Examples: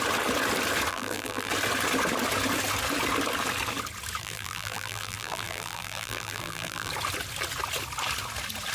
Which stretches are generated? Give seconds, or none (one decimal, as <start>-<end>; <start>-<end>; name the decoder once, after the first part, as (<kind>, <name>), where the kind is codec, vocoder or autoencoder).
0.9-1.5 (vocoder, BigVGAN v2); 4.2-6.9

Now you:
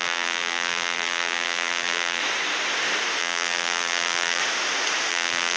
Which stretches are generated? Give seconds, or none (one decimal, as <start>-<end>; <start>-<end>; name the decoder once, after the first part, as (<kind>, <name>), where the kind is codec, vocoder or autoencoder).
0.0-2.2 (vocoder, BigVGAN v2); 3.2-4.4; 5.1-5.6

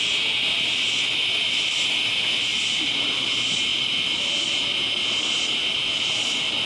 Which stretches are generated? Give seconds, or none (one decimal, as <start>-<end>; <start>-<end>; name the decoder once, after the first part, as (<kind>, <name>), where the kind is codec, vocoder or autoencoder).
2.5-3.3 (vocoder, BigVGAN v2); 3.7-4.9; 5.6-6.7

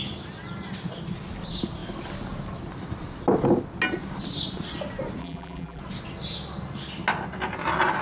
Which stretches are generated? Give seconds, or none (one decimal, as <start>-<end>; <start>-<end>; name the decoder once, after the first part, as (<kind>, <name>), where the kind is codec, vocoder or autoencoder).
5.2-5.8 (vocoder, BigVGAN v2)